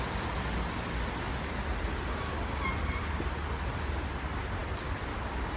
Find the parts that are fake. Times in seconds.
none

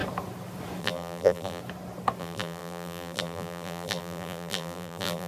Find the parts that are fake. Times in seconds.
0.8-1.6 (vocoder, BigVGAN v2); 2.2-5.3

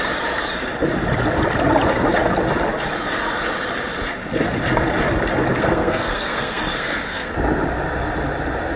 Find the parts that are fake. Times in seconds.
5.5-7.3 (codec, SNAC)

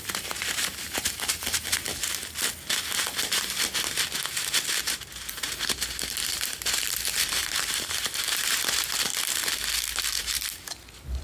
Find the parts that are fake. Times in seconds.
0.0-1.9 (vocoder, BigVGAN v2); 4.8-9.1; 10.2-11.2